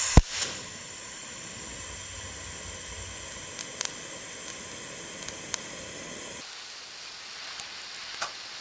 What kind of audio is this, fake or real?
real